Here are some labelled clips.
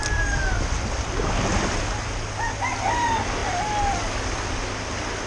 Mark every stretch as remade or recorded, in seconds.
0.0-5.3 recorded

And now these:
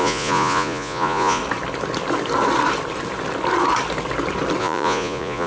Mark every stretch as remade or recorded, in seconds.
0.0-1.4 remade; 1.4-4.6 recorded; 4.6-5.5 remade

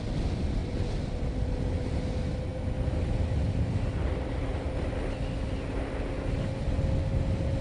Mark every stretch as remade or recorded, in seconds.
0.0-7.6 recorded

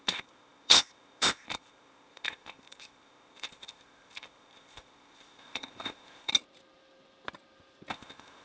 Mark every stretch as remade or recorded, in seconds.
0.0-6.3 remade; 6.3-7.9 recorded; 7.9-8.4 remade

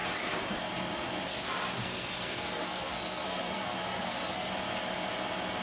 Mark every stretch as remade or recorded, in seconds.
0.0-1.8 recorded; 1.8-4.5 remade; 4.5-5.6 recorded